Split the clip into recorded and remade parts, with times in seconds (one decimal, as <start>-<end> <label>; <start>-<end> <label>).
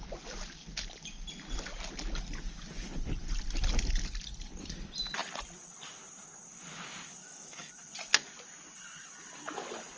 0.0-7.2 recorded; 7.2-7.7 remade; 7.7-10.0 recorded